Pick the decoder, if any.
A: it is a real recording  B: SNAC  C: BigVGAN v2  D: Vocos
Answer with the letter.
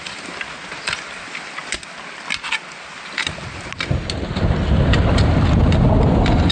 A